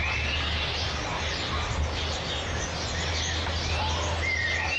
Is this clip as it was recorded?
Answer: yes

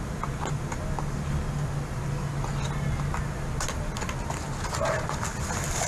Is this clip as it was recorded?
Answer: yes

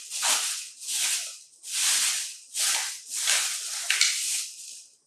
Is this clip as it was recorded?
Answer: yes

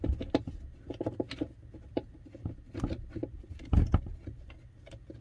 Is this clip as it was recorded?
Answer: yes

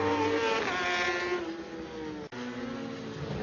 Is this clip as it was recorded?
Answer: yes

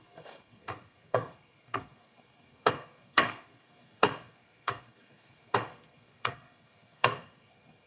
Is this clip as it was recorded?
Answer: no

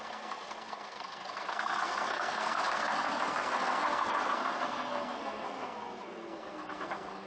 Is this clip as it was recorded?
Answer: no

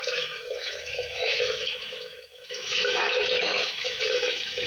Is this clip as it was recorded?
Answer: no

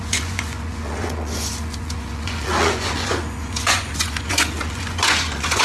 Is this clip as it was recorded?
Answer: no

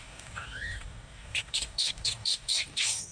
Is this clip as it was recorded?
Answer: no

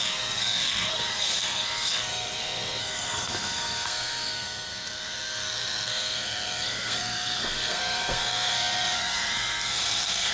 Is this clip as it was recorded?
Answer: no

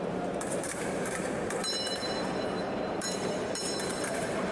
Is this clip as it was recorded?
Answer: no